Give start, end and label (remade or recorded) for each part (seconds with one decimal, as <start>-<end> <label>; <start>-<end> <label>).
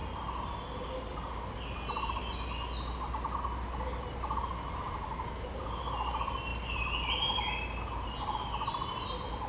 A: 0.0-9.5 recorded